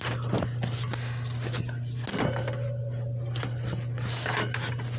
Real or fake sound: real